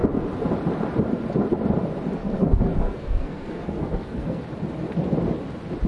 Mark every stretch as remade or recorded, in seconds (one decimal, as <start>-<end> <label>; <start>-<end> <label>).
0.0-2.2 recorded; 2.2-4.4 remade; 4.4-5.9 recorded